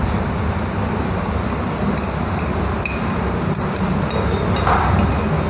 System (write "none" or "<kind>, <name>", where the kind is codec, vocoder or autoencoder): none